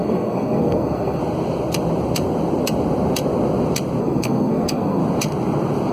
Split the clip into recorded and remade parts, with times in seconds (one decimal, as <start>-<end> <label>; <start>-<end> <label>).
0.0-1.2 remade; 1.2-4.0 recorded; 4.0-5.0 remade; 5.0-5.9 recorded